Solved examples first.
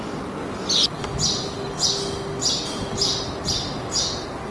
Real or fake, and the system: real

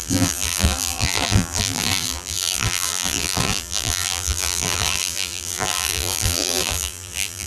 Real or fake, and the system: fake, vocoder, BigVGAN v2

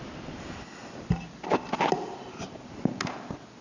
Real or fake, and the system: real